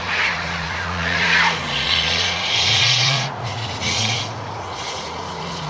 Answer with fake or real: fake